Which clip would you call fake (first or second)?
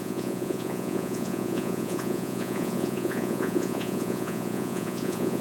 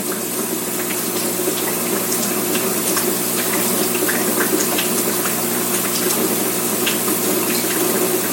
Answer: first